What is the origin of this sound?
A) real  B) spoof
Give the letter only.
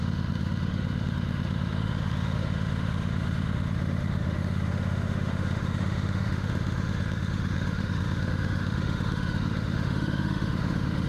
B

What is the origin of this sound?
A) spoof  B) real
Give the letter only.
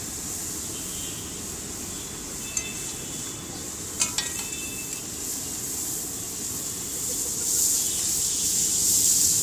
B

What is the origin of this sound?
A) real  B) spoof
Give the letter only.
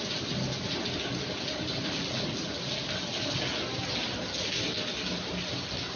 A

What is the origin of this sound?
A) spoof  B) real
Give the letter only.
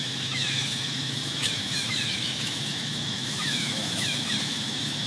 A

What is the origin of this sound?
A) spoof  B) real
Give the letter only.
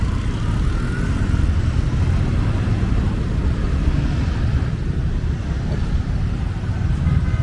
B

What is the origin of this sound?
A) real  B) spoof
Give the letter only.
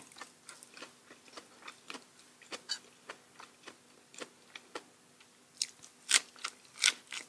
A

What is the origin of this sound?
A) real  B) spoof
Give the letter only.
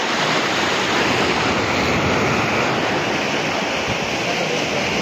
A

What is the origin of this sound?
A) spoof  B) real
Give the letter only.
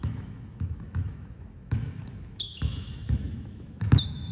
A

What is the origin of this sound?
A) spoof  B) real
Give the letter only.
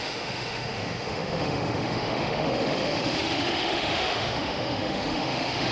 A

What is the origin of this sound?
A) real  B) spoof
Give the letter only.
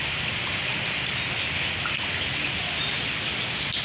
A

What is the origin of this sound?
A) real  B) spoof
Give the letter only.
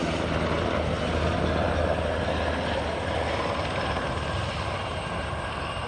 A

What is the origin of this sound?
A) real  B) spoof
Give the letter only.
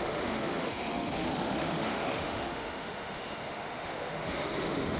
B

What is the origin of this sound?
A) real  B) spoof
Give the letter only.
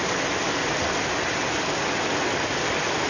A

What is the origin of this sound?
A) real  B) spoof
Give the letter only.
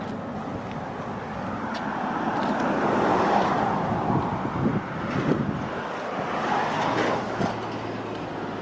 A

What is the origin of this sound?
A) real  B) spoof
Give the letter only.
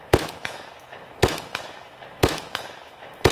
B